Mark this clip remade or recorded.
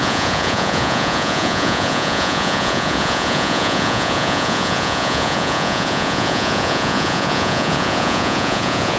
remade